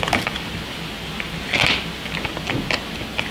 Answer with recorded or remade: recorded